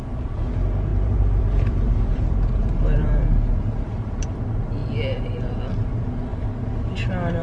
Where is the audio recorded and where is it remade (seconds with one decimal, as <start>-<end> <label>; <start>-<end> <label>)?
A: 0.0-0.9 recorded; 0.9-3.2 remade; 3.2-7.4 recorded